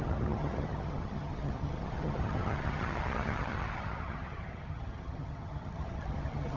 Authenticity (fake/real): fake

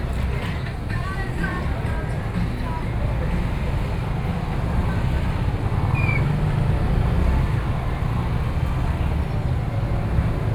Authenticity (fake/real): real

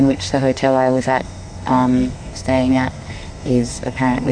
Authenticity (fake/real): fake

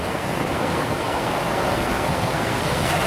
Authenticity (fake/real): fake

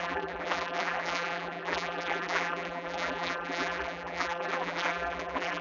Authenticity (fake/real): fake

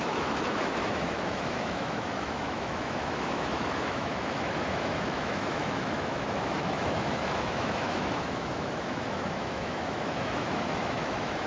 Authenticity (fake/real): fake